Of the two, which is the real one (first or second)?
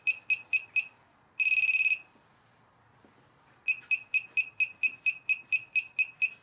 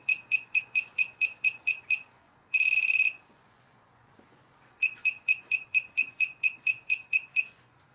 first